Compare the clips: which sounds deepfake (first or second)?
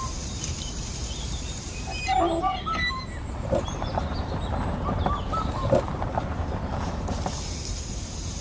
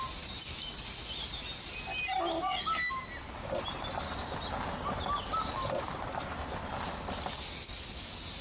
first